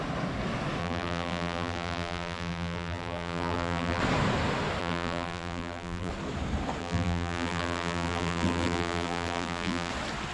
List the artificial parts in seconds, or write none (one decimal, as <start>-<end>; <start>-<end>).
0.8-4.0; 4.8-6.1; 6.8-9.9